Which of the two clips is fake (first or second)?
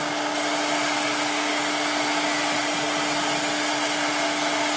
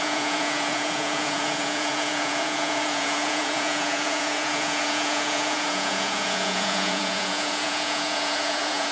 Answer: second